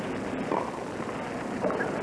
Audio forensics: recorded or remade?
recorded